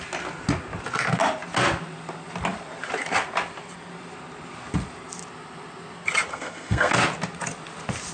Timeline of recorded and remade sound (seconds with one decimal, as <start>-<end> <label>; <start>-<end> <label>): 0.0-6.3 recorded; 6.3-6.9 remade; 6.9-8.1 recorded